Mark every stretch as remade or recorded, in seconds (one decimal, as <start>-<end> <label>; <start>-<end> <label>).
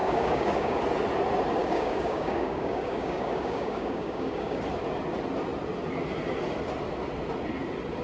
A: 0.0-0.8 remade; 0.8-1.6 recorded; 1.6-4.6 remade; 4.6-8.0 recorded